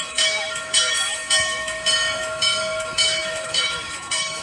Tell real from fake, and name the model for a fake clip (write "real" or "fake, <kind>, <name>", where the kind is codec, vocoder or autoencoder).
fake, autoencoder, DAC-VAE